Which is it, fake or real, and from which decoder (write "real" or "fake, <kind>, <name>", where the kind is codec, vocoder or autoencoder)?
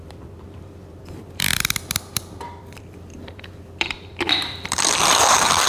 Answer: fake, vocoder, BigVGAN v2